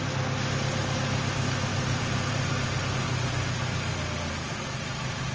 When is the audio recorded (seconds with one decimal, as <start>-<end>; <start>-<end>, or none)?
0.0-1.7; 2.8-5.3

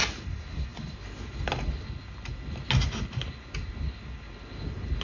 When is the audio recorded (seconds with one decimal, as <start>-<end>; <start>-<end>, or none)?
0.0-5.0

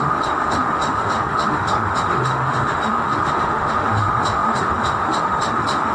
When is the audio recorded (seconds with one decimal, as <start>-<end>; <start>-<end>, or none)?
none

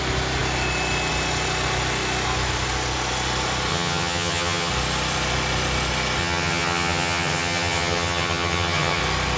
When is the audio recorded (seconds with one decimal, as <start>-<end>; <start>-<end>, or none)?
0.0-3.7; 4.7-6.2; 9.0-9.4